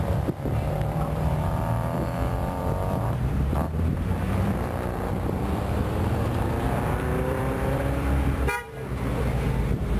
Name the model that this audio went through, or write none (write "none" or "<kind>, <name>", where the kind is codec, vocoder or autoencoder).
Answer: vocoder, BigVGAN v2